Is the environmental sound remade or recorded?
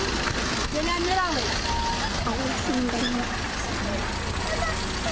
recorded